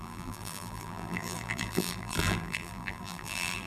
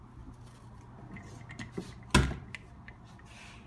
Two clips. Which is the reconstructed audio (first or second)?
first